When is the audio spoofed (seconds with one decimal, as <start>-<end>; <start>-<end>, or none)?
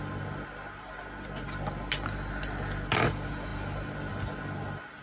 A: none